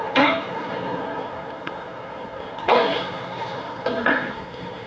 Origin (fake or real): fake